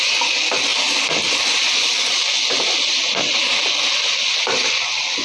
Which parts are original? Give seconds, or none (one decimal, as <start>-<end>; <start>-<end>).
0.0-5.2